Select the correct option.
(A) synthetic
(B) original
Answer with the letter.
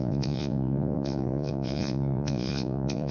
A